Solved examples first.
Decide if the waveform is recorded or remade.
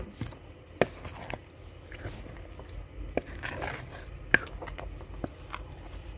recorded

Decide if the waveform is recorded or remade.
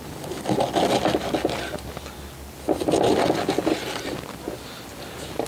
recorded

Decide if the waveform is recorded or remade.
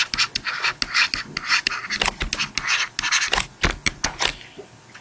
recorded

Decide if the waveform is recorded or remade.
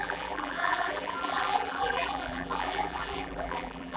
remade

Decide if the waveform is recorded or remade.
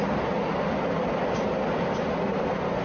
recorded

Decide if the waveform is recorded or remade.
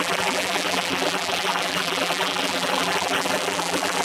remade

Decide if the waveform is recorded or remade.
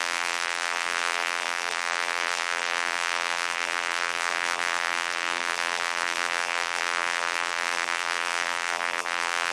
remade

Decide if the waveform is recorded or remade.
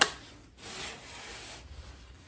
recorded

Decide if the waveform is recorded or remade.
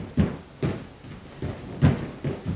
recorded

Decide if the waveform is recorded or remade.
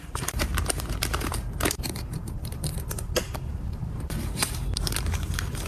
remade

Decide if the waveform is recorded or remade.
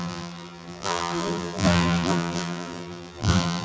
remade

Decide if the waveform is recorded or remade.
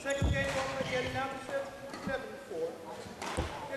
recorded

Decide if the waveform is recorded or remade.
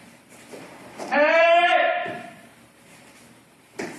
remade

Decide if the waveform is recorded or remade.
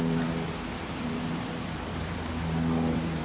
remade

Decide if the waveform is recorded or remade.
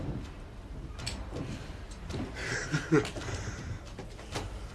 remade